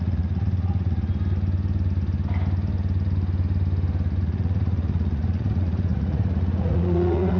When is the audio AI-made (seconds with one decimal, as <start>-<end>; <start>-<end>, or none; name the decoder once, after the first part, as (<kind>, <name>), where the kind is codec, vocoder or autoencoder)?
0.0-1.1 (vocoder, Vocos); 4.2-7.4